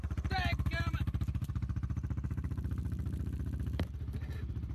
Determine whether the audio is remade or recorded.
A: remade